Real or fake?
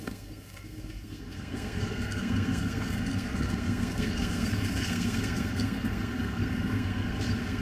fake